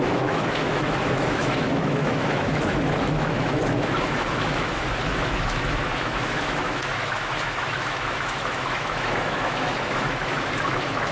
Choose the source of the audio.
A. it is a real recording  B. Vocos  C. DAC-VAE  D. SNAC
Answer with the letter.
C